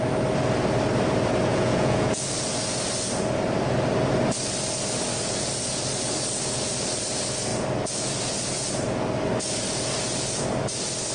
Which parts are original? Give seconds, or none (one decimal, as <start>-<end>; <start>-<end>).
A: 0.0-1.5; 2.2-11.1